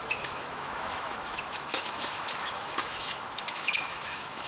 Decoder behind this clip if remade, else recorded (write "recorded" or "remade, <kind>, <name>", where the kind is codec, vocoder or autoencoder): remade, autoencoder, DAC-VAE